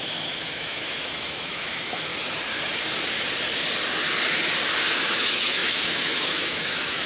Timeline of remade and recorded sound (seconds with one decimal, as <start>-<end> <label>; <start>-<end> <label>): 0.0-2.1 remade; 2.1-5.1 recorded; 5.1-7.1 remade

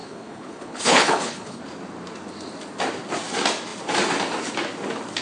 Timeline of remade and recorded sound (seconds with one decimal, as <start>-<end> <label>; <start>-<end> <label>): 0.0-1.6 remade; 1.6-5.2 recorded